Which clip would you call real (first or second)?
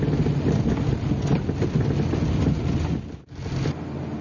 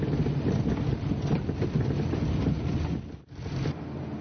first